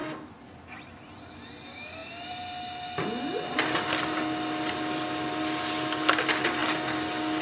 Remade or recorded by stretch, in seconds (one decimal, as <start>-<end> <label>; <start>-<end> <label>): 0.0-7.4 recorded